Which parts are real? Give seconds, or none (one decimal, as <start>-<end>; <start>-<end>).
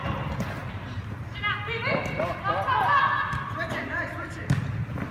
0.0-5.1